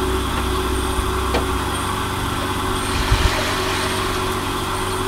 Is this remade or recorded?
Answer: recorded